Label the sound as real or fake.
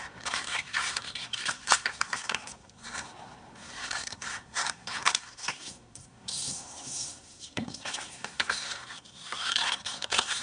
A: fake